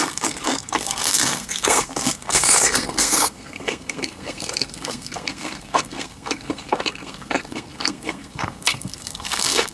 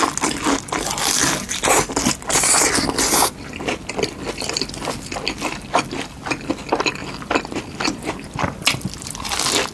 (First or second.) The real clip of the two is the second